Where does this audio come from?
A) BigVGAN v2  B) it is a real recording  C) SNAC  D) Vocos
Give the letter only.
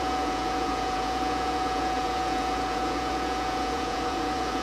D